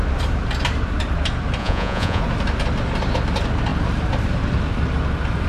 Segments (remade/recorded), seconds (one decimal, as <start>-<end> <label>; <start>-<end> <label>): 0.0-1.6 recorded; 1.6-2.2 remade; 2.2-5.5 recorded